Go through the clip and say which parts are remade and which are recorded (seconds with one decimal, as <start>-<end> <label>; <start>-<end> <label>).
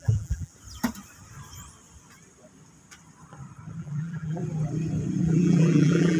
0.0-0.5 remade; 0.5-3.8 recorded; 3.8-4.4 remade; 4.4-5.2 recorded; 5.2-6.2 remade